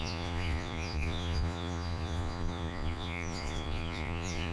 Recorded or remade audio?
remade